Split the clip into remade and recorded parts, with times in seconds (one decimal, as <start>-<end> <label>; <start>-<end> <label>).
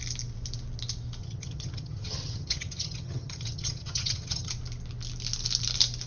0.0-1.2 recorded; 1.2-4.5 remade; 4.5-6.1 recorded